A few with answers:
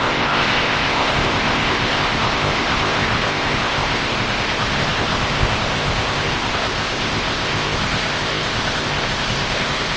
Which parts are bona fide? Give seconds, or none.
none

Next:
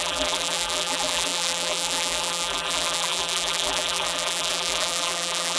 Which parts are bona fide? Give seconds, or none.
none

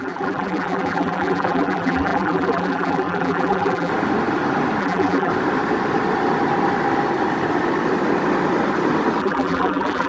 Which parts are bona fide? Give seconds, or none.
3.9-4.8; 5.3-9.2

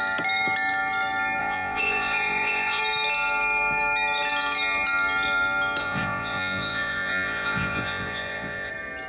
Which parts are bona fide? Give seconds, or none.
0.0-1.4; 2.8-5.8; 8.7-9.1

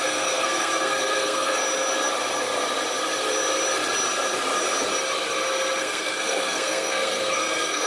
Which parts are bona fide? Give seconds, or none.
1.6-5.8

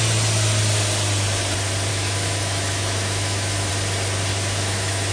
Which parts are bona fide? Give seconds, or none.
0.0-1.9; 3.7-4.3

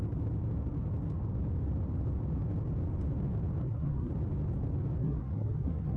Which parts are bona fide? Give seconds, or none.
0.0-3.6; 4.1-5.0

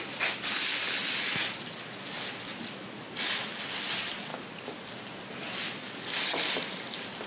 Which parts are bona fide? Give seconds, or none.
0.0-7.3